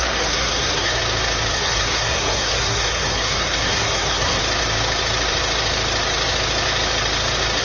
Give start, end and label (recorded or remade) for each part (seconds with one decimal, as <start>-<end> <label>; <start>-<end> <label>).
0.0-1.0 remade; 1.0-1.5 recorded; 1.5-4.4 remade; 4.4-7.6 recorded